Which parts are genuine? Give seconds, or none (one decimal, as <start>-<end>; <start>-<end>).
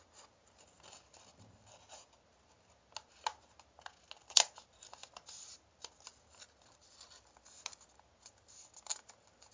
0.0-6.1; 7.6-9.5